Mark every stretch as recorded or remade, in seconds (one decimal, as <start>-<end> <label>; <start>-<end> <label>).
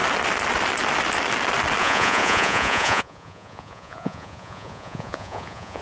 0.0-1.8 recorded; 1.8-5.8 remade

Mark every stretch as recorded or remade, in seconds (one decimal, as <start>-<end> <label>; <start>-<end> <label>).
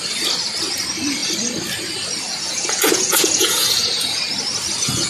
0.0-2.3 recorded; 2.3-4.2 remade; 4.2-5.1 recorded